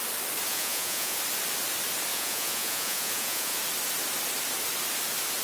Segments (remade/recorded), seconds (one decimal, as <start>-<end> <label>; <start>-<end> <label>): 0.0-0.5 recorded; 0.5-1.2 remade; 1.2-2.1 recorded; 2.1-3.6 remade; 3.6-5.4 recorded